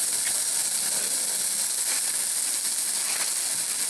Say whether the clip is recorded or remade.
recorded